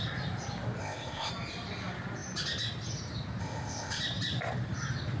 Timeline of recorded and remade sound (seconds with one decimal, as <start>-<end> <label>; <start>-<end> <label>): 0.0-0.8 recorded; 0.8-1.3 remade; 1.3-3.4 recorded; 3.4-4.0 remade; 4.0-5.2 recorded